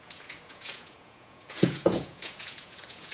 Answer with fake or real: fake